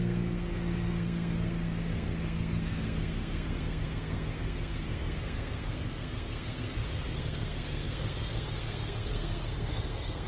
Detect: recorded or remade remade